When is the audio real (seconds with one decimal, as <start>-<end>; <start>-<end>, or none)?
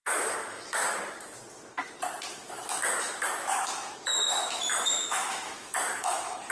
1.0-2.3